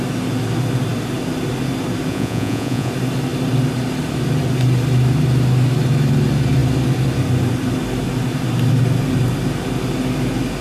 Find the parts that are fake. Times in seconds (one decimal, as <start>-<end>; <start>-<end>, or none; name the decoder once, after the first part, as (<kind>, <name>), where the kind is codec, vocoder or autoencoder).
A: 2.1-2.9 (vocoder, Vocos)